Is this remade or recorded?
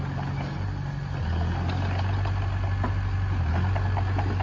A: recorded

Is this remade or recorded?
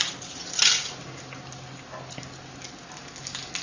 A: recorded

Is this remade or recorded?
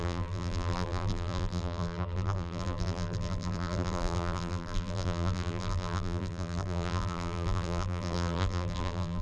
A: remade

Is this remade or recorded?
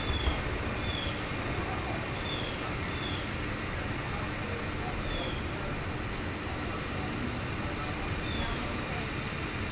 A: recorded